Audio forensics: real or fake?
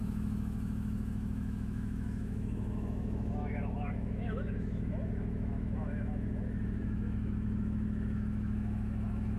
fake